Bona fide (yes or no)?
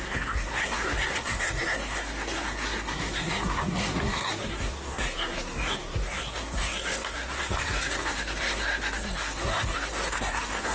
no